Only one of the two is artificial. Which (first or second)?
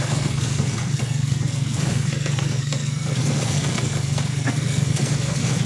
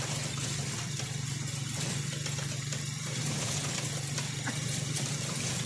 first